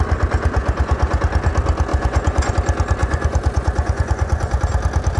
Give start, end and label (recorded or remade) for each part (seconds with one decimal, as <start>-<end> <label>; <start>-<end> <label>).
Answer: 0.0-0.6 recorded; 0.6-1.2 remade; 1.2-1.9 recorded; 1.9-2.5 remade; 2.5-3.0 recorded; 3.0-4.6 remade; 4.6-5.2 recorded